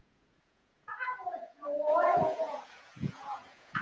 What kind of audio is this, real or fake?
fake